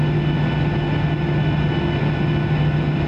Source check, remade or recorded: recorded